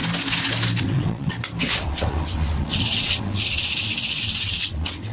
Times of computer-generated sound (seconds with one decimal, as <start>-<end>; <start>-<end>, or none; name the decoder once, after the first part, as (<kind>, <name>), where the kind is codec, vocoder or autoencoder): 0.8-1.3 (vocoder, WaveNeXt); 1.8-5.1